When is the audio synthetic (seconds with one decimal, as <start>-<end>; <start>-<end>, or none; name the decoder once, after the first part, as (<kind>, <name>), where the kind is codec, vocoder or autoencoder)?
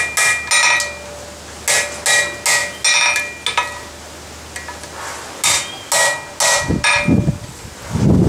none